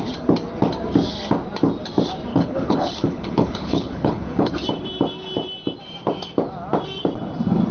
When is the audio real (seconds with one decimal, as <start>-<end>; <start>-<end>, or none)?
0.0-2.3; 4.5-7.7